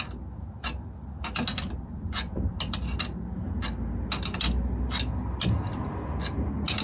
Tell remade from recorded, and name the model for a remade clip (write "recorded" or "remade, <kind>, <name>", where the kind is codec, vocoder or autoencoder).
recorded